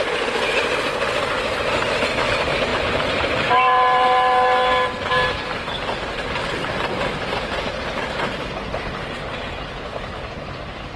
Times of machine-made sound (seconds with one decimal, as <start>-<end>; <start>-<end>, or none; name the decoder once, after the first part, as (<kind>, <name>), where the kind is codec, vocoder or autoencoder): none